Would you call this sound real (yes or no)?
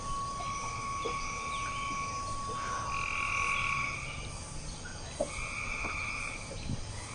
yes